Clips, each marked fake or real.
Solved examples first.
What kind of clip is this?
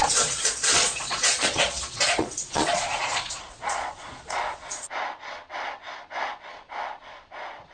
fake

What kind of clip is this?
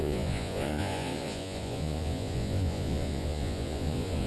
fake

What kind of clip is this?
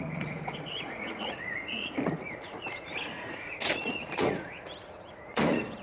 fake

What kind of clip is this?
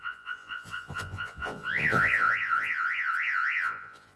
fake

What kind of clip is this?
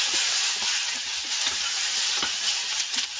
real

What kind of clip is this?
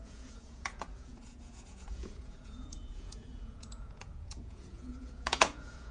fake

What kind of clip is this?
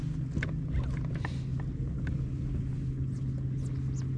real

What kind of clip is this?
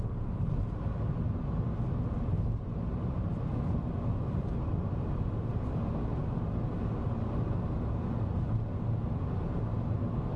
real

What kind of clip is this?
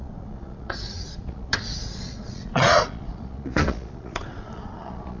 fake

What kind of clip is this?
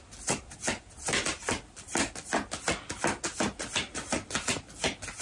real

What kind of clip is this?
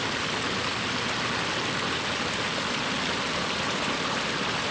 real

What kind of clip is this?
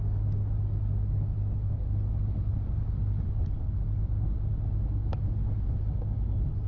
real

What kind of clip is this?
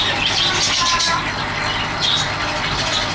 real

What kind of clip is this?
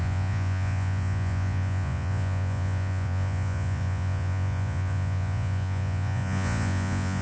fake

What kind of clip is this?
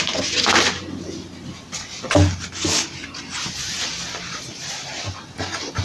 real